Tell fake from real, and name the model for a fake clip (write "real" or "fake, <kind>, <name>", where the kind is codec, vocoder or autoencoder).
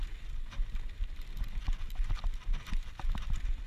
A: real